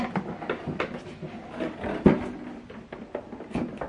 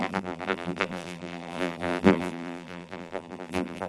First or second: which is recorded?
first